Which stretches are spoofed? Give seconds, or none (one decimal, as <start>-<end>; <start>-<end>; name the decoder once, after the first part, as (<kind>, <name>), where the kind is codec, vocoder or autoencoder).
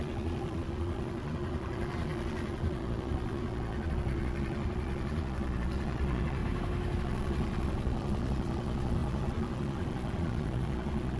0.0-6.4 (vocoder, Vocos); 7.0-11.2